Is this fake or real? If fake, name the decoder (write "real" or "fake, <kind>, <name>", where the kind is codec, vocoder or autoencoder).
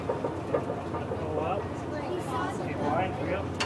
real